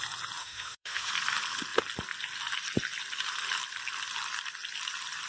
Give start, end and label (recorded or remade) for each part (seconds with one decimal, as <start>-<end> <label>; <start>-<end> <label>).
0.0-0.4 recorded; 0.4-1.1 remade; 1.1-5.3 recorded